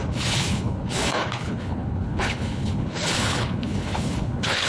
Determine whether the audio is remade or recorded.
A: remade